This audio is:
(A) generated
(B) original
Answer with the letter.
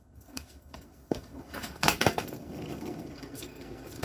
A